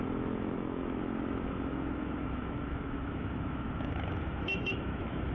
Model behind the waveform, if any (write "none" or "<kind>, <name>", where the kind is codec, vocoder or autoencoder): autoencoder, DAC-VAE